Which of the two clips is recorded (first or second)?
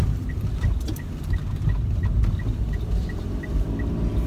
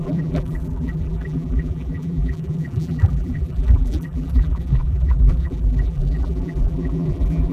first